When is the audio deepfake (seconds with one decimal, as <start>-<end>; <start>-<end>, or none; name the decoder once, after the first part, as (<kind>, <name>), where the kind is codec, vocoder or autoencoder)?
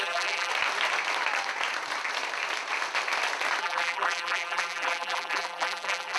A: 0.0-0.5 (vocoder, BigVGAN v2); 3.6-6.2